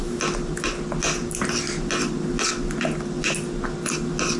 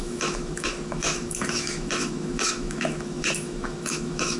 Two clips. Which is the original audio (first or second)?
first